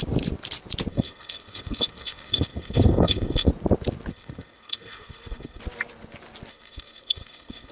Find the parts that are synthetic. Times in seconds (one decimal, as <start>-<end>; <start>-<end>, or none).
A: 0.9-3.5; 4.1-5.6; 6.5-7.7